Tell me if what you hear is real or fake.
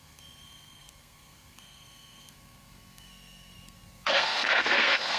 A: fake